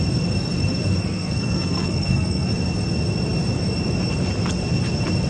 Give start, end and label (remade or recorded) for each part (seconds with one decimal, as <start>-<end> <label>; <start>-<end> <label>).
0.0-1.0 recorded; 1.0-2.5 remade; 2.5-5.3 recorded